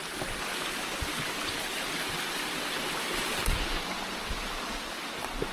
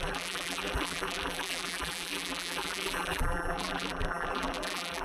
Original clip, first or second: first